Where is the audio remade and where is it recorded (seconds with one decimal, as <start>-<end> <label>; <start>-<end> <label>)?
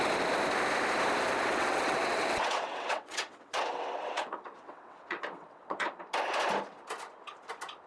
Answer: 0.0-1.5 recorded; 1.5-5.9 remade; 5.9-7.9 recorded